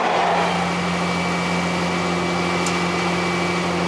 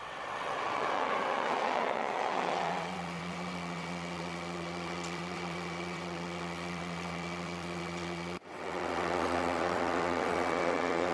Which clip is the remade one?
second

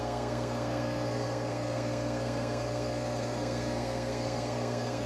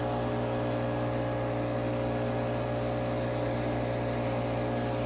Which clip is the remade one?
first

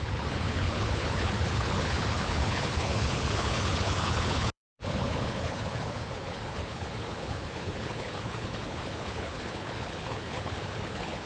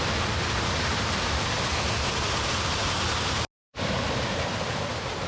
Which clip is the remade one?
first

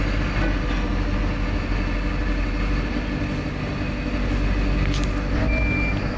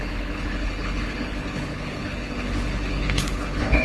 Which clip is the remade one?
second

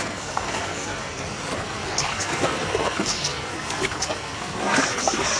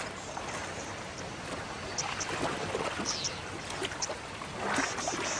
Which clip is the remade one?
first